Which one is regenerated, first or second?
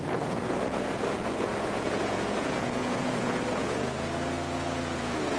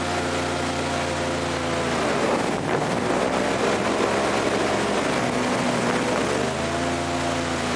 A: first